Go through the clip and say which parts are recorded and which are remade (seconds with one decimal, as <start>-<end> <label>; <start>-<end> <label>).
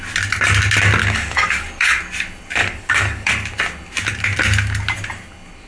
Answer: 0.0-1.0 recorded; 1.0-2.0 remade; 2.0-2.6 recorded; 2.6-3.3 remade; 3.3-5.7 recorded